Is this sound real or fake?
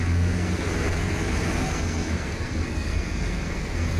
fake